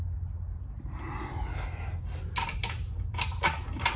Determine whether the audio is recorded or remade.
recorded